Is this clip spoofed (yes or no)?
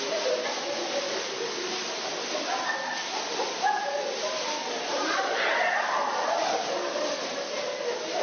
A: no